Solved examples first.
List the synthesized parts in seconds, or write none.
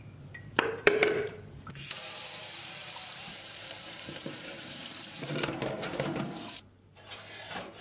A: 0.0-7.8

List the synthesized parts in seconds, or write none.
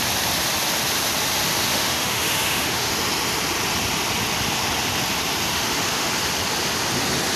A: 1.7-2.9; 5.5-6.1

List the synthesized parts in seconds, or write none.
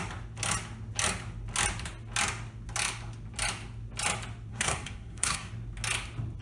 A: 4.5-5.5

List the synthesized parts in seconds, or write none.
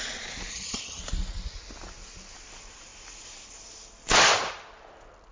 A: 0.5-1.0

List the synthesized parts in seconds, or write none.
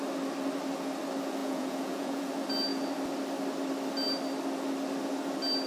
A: 1.4-2.3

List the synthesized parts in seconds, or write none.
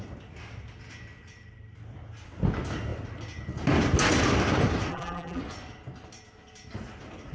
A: 4.9-5.4